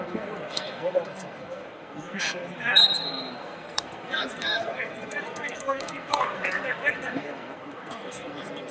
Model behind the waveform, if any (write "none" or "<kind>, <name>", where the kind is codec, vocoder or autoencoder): codec, SNAC